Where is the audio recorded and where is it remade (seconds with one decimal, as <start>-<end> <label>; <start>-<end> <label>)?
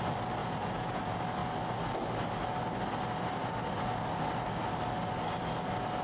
0.0-0.4 recorded; 0.4-1.0 remade; 1.0-6.0 recorded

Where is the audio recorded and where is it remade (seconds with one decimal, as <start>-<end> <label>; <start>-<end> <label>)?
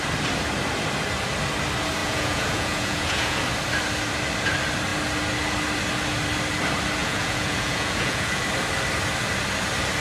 0.0-2.0 recorded; 2.0-3.4 remade; 3.4-7.0 recorded; 7.0-8.4 remade; 8.4-10.0 recorded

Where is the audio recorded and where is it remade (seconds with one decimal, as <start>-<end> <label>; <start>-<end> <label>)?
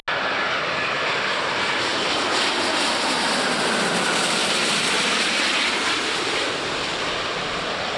0.0-4.4 recorded; 4.4-6.1 remade; 6.1-8.0 recorded